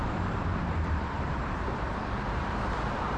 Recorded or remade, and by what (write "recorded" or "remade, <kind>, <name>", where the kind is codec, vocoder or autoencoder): remade, vocoder, BigVGAN v2